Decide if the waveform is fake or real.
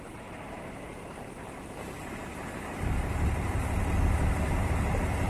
fake